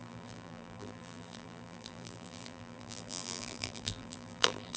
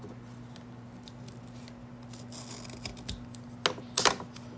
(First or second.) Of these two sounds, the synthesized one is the first